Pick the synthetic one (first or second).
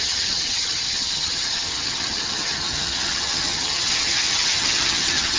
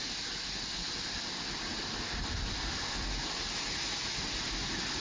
first